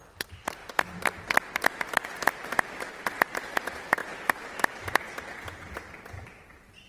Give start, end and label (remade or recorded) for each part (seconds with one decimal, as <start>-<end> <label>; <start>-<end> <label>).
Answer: 0.0-6.9 recorded